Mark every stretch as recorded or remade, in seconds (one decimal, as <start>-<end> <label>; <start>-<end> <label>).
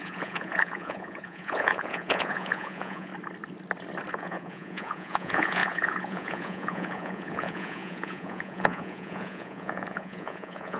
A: 0.0-3.1 remade; 3.1-4.1 recorded; 4.1-10.8 remade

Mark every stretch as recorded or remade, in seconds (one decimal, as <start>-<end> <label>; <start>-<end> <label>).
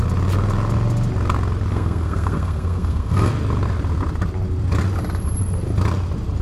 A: 0.0-1.7 recorded; 1.7-3.3 remade; 3.3-6.4 recorded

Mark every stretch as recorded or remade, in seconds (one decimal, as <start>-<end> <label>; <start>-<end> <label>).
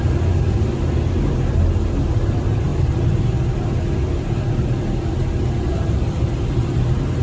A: 0.0-7.2 recorded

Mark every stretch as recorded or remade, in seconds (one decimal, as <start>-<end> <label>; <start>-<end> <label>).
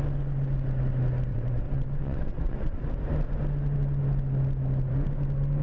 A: 0.0-1.3 recorded; 1.3-2.8 remade; 2.8-5.6 recorded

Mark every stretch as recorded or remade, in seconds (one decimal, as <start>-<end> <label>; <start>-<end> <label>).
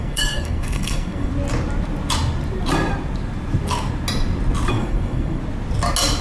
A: 0.0-1.3 remade; 1.3-4.7 recorded; 4.7-5.4 remade; 5.4-6.2 recorded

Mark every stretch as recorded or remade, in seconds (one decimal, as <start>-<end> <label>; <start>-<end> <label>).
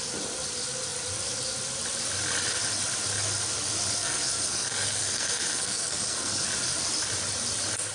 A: 0.0-4.0 recorded; 4.0-6.5 remade; 6.5-7.9 recorded